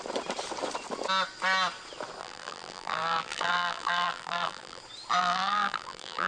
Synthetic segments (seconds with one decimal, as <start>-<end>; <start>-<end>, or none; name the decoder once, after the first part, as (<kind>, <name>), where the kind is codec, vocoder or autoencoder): 2.2-4.8 (vocoder, BigVGAN v2); 5.2-6.3